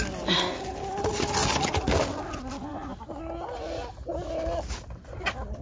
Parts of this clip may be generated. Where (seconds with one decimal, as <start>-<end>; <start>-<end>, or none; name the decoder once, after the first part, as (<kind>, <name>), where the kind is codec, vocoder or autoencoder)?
none